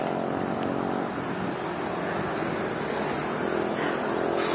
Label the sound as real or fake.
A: real